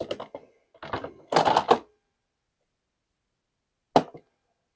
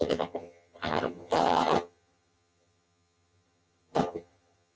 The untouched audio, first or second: first